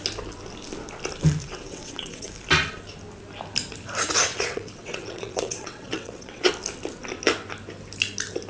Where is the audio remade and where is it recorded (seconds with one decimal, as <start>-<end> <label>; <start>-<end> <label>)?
0.0-1.4 recorded; 1.4-2.3 remade; 2.3-4.3 recorded; 4.3-6.5 remade; 6.5-8.5 recorded